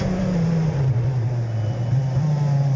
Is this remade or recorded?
recorded